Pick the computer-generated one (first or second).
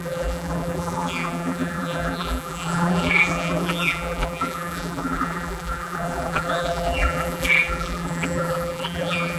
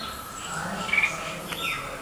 first